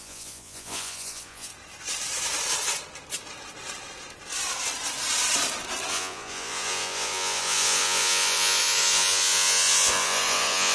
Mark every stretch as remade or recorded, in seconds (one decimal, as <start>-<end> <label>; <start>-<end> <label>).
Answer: 0.0-1.5 remade; 1.5-5.9 recorded; 5.9-10.7 remade